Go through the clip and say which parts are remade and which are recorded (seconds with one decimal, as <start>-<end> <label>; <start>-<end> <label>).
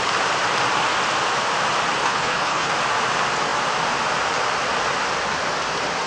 0.0-2.0 recorded; 2.0-2.7 remade; 2.7-6.1 recorded